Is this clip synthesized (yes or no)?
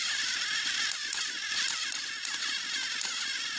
no